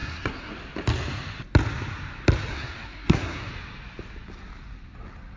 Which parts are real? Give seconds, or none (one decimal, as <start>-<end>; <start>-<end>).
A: 0.5-2.5; 3.5-5.4